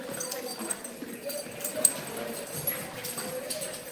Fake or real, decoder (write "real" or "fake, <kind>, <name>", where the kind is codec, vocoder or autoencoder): real